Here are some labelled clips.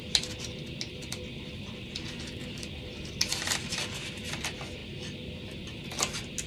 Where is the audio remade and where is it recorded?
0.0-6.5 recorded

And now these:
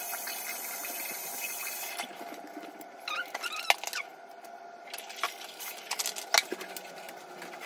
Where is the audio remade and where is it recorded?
0.0-7.7 recorded

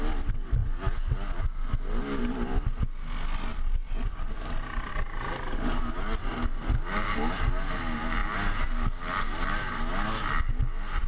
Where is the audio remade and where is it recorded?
0.0-3.5 recorded; 3.5-4.9 remade; 4.9-11.1 recorded

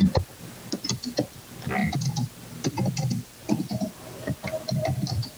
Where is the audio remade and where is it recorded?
0.0-1.8 remade; 1.8-4.8 recorded; 4.8-5.4 remade

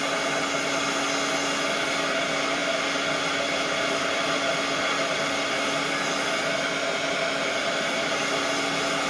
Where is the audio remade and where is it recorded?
0.0-9.1 recorded

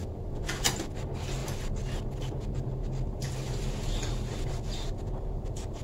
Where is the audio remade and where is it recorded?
0.0-5.8 recorded

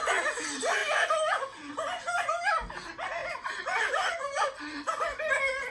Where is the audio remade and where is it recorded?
0.0-3.2 recorded; 3.2-5.3 remade; 5.3-5.7 recorded